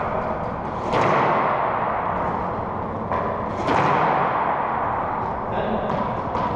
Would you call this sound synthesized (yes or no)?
no